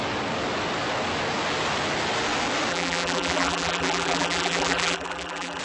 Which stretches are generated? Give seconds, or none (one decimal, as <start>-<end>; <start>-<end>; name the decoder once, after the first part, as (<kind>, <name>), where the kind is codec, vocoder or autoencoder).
2.7-5.6 (vocoder, BigVGAN v2)